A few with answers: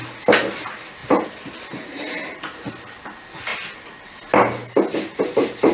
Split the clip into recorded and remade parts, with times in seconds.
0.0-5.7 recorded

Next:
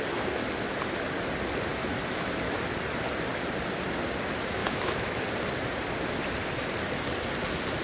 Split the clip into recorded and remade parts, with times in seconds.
0.0-4.6 recorded; 4.6-5.2 remade; 5.2-7.8 recorded